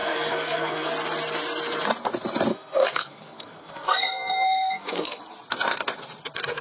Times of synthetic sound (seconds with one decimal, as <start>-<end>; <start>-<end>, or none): 0.0-0.9; 2.5-5.2